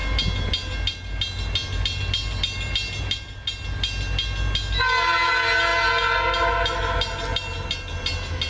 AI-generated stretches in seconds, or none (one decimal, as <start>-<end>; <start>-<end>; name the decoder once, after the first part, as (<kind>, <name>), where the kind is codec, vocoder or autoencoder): none